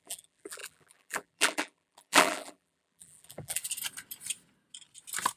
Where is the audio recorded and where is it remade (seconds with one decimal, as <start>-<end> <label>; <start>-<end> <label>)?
0.0-3.6 remade; 3.6-5.4 recorded